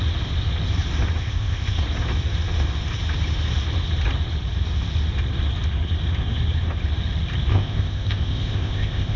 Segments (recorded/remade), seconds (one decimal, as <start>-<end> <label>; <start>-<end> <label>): 0.0-1.2 recorded; 1.2-1.8 remade; 1.8-7.5 recorded; 7.5-9.2 remade